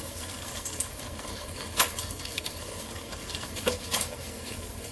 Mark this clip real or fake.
fake